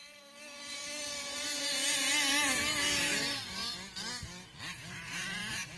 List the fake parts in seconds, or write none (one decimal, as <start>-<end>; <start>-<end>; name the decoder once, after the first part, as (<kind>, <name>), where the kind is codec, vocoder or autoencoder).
0.0-3.6 (vocoder, BigVGAN v2); 4.9-5.8